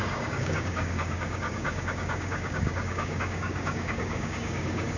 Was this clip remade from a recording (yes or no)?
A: yes